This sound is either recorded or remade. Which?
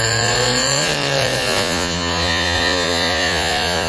remade